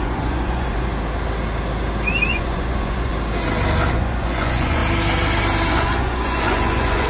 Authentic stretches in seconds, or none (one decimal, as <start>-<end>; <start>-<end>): 0.9-2.3; 3.1-3.9; 4.8-5.7